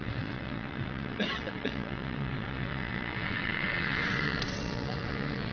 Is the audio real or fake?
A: fake